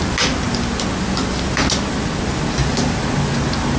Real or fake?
real